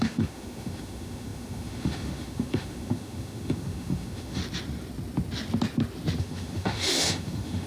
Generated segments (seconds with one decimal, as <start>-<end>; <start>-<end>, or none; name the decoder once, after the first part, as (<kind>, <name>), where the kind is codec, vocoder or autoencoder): 0.0-4.4 (autoencoder, DAC-VAE); 6.2-7.7